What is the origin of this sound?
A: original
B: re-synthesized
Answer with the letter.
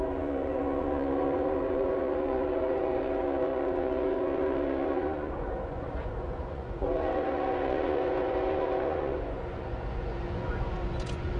B